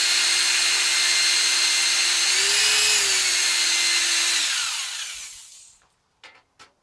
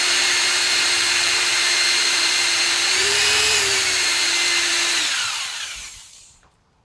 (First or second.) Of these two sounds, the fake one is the second